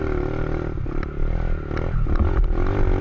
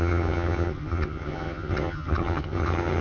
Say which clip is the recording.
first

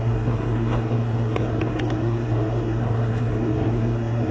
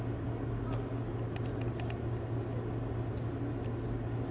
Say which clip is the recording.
second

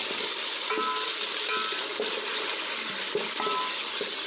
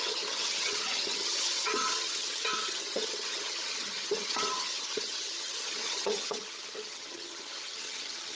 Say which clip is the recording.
first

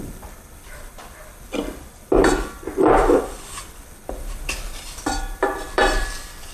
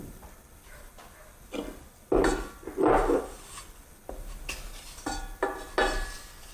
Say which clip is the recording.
second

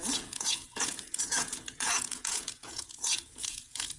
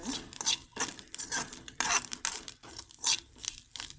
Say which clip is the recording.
second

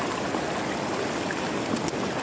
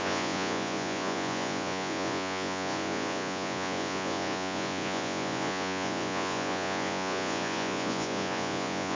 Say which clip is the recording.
first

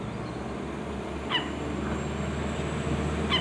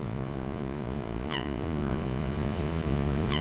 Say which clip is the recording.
first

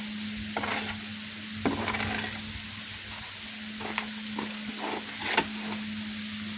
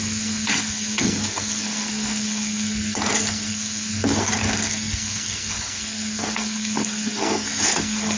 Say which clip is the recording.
first